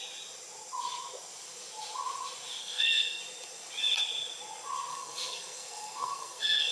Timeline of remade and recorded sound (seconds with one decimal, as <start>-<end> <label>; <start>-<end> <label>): 0.0-2.6 recorded; 2.6-3.2 remade; 3.2-4.9 recorded; 4.9-6.7 remade